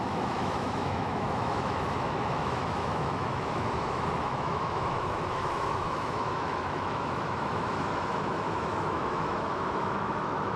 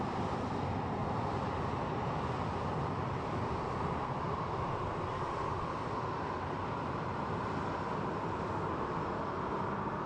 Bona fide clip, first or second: second